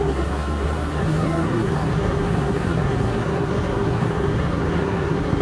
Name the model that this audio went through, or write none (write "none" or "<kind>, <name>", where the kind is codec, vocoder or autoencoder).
codec, SNAC